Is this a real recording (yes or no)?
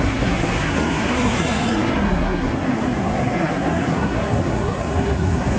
no